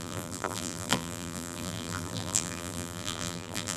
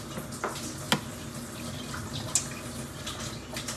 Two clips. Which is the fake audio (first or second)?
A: first